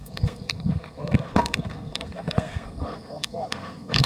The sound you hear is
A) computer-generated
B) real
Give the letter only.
A